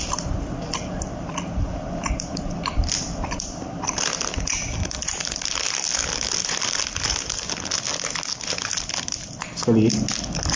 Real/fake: real